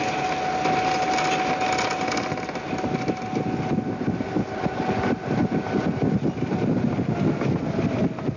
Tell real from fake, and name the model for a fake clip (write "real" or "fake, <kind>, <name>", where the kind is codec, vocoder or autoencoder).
real